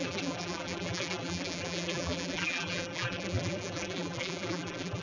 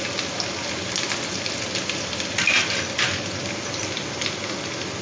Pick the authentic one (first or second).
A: second